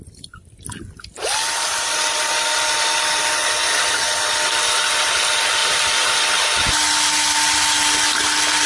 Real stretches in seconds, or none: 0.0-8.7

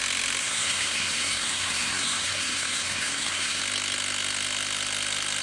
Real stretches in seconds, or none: 0.0-0.4; 3.6-5.4

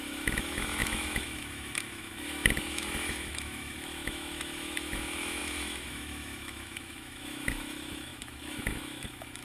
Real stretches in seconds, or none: none

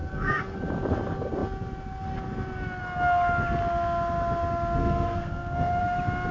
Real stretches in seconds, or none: 0.6-4.8; 5.8-6.3

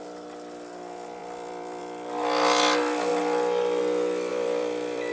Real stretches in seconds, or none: 0.0-1.2; 1.8-4.3

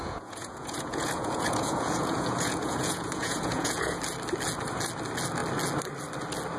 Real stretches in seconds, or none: 4.0-6.6

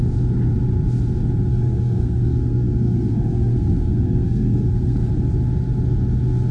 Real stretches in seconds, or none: 0.0-1.5; 5.1-6.5

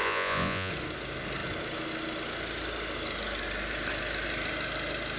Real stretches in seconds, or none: 0.7-5.2